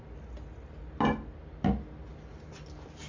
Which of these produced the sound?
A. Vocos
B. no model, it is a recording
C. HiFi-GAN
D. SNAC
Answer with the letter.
B